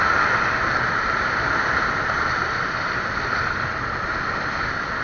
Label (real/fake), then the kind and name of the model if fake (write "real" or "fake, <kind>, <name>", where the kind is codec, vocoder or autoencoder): real